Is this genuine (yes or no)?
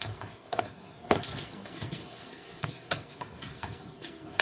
no